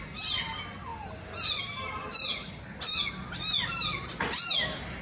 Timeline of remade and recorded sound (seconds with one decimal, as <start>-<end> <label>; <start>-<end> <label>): 0.0-5.0 recorded